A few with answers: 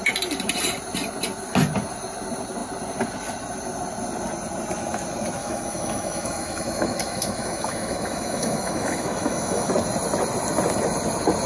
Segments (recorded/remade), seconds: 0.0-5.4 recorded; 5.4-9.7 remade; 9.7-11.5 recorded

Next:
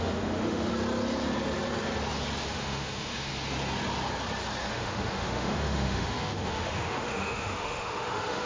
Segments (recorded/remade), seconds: 0.0-0.7 remade; 0.7-2.5 recorded; 2.5-3.3 remade; 3.3-4.6 recorded; 4.6-8.5 remade

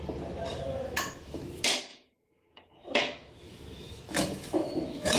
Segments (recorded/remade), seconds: 0.0-0.5 recorded; 0.5-1.4 remade; 1.4-1.9 recorded; 1.9-5.2 remade

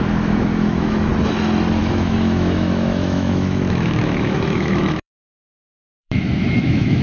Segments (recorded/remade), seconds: 0.0-1.1 remade; 1.1-1.8 recorded; 1.8-7.0 remade

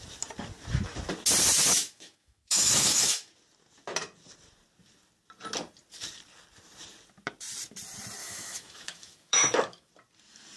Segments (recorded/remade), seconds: 0.0-1.8 recorded; 1.8-3.3 remade; 3.3-8.2 recorded; 8.2-9.9 remade; 9.9-10.6 recorded

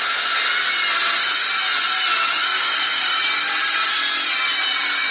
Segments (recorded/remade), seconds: 0.0-5.1 recorded

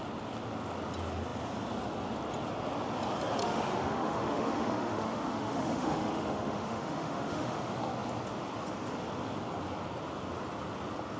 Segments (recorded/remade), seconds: 0.0-3.4 recorded; 3.4-7.6 remade; 7.6-11.2 recorded